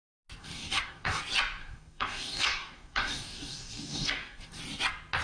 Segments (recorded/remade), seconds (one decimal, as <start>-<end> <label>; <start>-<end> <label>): 0.0-0.4 recorded; 0.4-1.2 remade; 1.2-1.6 recorded; 1.6-4.6 remade; 4.6-5.2 recorded